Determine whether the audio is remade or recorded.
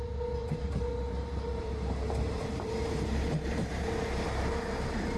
remade